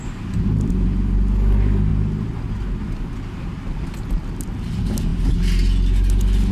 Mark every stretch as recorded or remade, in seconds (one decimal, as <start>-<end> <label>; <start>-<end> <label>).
0.0-6.5 recorded